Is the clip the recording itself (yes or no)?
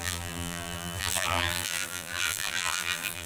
no